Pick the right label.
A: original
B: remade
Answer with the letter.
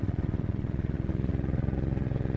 B